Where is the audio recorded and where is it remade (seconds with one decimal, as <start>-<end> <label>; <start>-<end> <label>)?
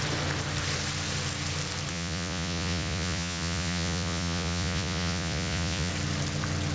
0.0-1.9 recorded; 1.9-5.9 remade; 5.9-6.7 recorded